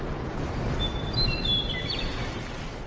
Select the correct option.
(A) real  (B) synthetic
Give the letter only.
A